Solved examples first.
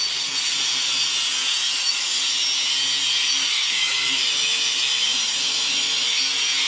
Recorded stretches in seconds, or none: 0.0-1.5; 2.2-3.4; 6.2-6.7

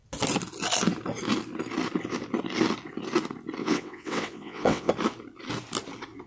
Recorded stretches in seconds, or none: 0.0-3.6; 4.9-6.3

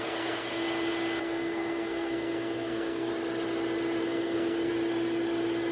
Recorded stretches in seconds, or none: 0.5-1.2; 3.1-4.0; 4.7-5.7